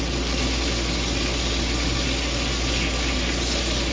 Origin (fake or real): real